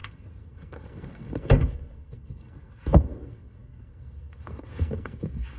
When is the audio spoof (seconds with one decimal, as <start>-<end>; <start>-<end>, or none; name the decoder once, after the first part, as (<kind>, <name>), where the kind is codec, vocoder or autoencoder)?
0.0-5.6 (codec, SNAC)